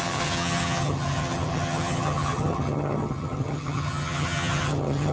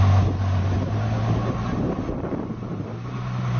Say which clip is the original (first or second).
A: second